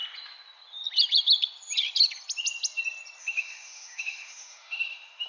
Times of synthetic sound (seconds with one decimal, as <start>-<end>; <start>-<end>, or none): 3.2-5.3